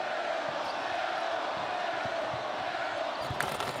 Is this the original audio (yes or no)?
yes